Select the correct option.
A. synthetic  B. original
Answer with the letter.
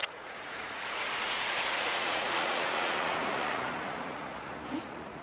A